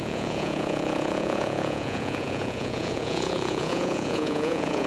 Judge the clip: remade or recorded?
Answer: remade